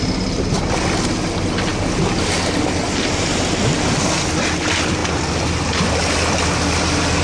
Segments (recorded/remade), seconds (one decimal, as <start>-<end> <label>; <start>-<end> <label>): 0.0-7.2 recorded